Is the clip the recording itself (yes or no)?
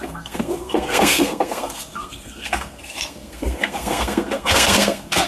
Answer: no